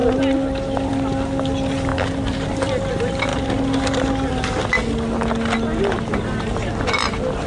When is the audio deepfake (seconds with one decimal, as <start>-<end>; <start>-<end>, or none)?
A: 1.9-2.6